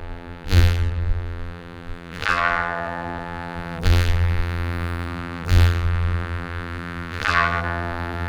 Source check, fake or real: fake